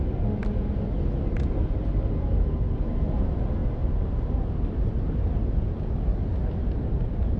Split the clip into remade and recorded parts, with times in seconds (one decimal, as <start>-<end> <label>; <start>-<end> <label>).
0.0-7.4 recorded